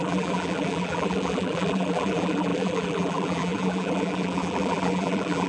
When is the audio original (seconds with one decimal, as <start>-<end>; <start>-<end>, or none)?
none